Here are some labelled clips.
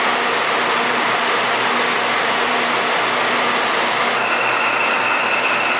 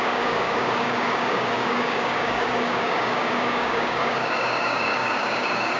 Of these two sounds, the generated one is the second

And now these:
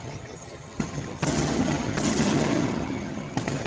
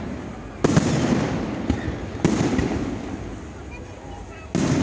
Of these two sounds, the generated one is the first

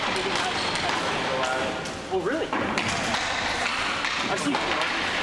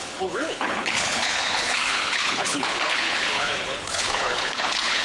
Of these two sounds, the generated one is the second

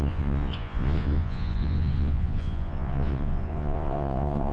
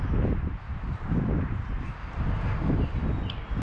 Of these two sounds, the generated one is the first